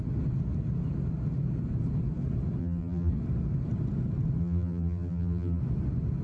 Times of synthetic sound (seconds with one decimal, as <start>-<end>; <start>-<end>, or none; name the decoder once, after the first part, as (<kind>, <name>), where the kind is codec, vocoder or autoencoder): 2.6-3.1 (vocoder, BigVGAN v2); 4.4-5.6

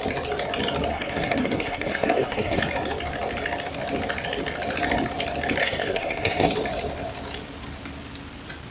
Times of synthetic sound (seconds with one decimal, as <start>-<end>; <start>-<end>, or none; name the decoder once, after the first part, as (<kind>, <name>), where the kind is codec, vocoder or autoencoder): 0.9-2.6 (codec, SNAC); 5.6-6.5

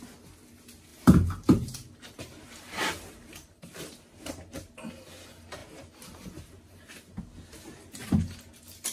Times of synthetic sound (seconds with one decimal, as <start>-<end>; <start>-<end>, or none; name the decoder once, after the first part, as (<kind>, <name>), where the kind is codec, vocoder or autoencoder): 0.9-4.3 (vocoder, BigVGAN v2); 5.6-7.2

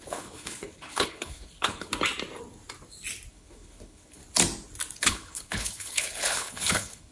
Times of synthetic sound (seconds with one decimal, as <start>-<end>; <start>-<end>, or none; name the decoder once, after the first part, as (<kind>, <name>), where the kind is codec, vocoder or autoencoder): 0.0-1.9 (codec, HILCodec); 3.3-4.2; 5.0-7.1

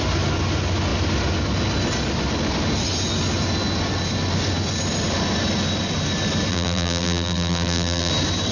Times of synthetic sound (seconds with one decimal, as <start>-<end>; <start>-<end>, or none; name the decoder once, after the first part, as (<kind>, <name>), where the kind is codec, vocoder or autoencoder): 6.5-8.1 (vocoder, BigVGAN v2)

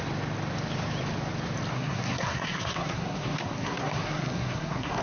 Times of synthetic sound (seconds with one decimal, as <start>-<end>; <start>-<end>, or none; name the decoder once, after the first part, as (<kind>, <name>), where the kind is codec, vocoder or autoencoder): 1.7-5.0 (codec, SNAC)